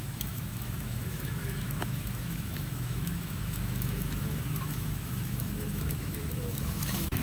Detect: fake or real fake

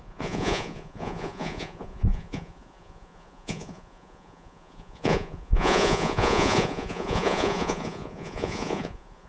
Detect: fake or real fake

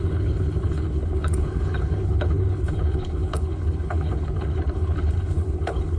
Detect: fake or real fake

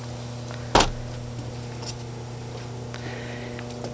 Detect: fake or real real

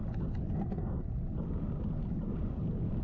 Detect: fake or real real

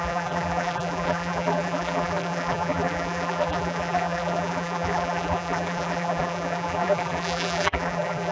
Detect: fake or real fake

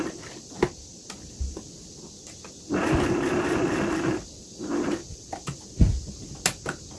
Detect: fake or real real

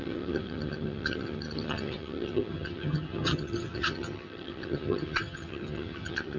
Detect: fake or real fake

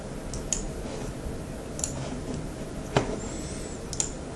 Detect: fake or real real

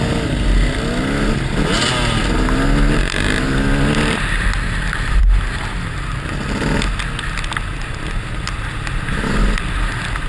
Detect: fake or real real